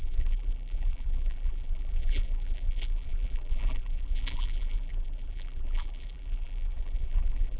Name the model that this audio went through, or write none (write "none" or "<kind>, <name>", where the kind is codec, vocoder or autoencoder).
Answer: vocoder, BigVGAN v2